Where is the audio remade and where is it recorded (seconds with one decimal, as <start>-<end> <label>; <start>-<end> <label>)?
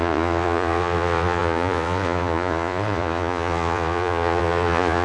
0.0-5.0 remade